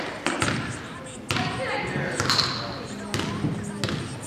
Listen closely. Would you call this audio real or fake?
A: real